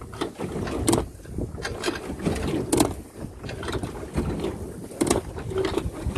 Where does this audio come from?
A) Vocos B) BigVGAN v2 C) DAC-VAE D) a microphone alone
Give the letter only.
D